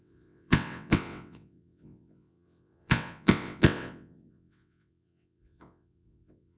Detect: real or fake fake